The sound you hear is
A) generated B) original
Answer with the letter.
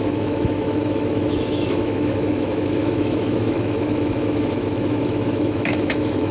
A